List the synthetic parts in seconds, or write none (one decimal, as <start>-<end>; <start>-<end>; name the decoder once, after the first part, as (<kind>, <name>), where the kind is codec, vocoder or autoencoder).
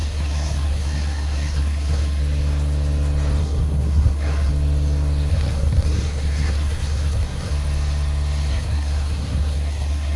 0.0-2.2 (codec, SNAC); 3.4-4.5; 5.3-7.5; 8.5-10.2